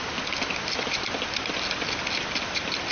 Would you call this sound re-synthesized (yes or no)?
no